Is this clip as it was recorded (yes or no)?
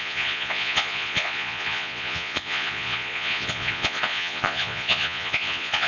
no